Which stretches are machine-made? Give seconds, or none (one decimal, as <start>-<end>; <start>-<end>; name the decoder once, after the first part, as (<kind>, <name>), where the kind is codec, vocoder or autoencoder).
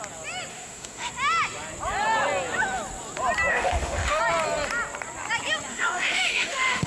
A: 0.5-1.1 (autoencoder, DAC-VAE); 3.5-4.2; 5.7-6.9